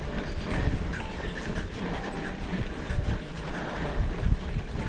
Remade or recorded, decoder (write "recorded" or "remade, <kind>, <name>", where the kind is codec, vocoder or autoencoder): recorded